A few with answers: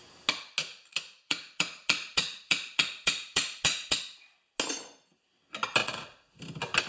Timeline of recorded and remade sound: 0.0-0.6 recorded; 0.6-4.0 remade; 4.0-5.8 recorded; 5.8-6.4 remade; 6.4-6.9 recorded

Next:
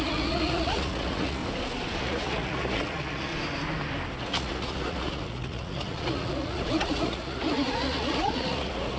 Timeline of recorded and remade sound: 0.0-1.4 remade; 1.4-2.0 recorded; 2.0-3.3 remade; 3.3-4.2 recorded; 4.2-9.0 remade

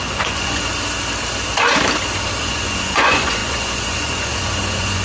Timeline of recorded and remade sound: 0.0-0.7 remade; 0.7-2.4 recorded; 2.4-5.0 remade

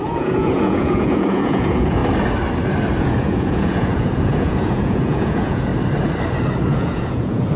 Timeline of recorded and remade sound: 0.0-2.0 remade; 2.0-3.0 recorded; 3.0-5.7 remade; 5.7-6.7 recorded; 6.7-7.6 remade

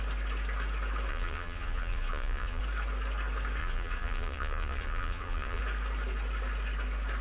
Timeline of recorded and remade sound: 0.0-1.1 recorded; 1.1-2.6 remade; 2.6-3.6 recorded; 3.6-5.6 remade; 5.6-7.2 recorded